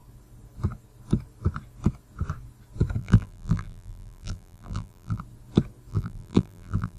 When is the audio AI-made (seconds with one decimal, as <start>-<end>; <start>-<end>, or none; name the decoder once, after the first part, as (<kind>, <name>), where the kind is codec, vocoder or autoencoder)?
3.0-5.2 (vocoder, BigVGAN v2); 5.9-7.0